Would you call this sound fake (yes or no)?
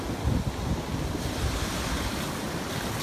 no